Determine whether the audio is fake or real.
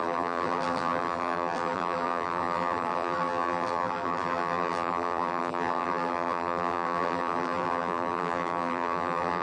fake